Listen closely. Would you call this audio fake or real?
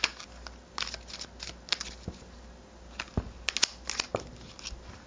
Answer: real